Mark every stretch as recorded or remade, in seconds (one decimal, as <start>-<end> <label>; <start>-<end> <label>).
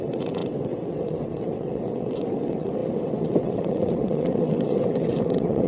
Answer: 0.0-5.7 remade